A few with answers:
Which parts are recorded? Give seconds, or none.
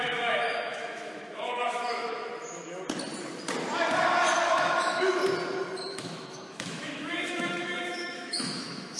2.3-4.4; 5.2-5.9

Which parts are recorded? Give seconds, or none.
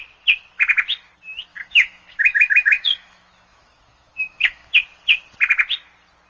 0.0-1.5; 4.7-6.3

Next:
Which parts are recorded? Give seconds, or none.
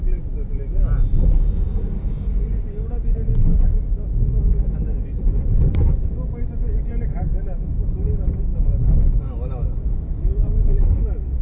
0.0-8.5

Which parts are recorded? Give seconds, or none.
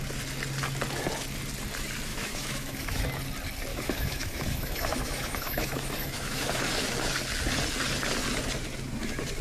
0.0-2.1; 3.0-3.7; 6.6-9.4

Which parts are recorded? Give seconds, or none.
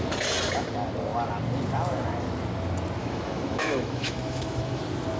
0.0-3.0; 4.8-5.2